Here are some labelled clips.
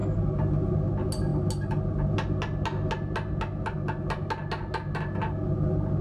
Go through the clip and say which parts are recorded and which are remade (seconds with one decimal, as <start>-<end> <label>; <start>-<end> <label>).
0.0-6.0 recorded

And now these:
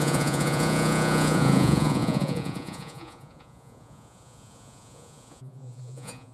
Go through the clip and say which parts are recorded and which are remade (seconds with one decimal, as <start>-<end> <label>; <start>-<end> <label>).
0.0-6.3 remade

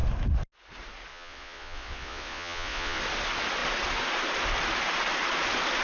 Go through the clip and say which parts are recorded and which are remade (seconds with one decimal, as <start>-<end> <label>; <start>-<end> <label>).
0.0-1.1 recorded; 1.1-3.0 remade; 3.0-5.8 recorded

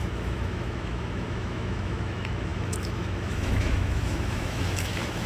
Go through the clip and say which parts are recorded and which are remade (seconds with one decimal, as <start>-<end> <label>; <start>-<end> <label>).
0.0-5.3 remade

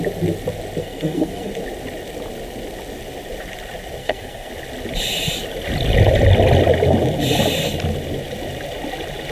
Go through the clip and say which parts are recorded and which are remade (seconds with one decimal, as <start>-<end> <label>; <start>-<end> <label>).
0.0-0.8 recorded; 0.8-1.5 remade; 1.5-4.0 recorded; 4.0-4.5 remade; 4.5-9.3 recorded

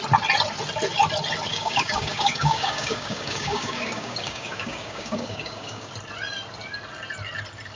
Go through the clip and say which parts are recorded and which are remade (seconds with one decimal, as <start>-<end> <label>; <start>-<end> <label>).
0.0-1.5 recorded; 1.5-5.9 remade; 5.9-7.8 recorded

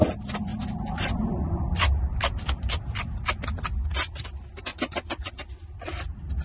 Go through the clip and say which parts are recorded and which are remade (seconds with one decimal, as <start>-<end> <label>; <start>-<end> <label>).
0.0-4.7 recorded; 4.7-5.3 remade; 5.3-6.4 recorded

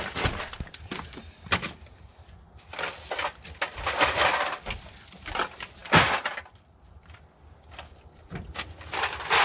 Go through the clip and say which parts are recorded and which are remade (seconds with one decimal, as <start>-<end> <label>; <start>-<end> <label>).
0.0-9.4 recorded